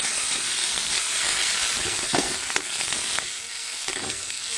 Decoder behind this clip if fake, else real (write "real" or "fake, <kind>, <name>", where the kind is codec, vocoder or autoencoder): fake, codec, SNAC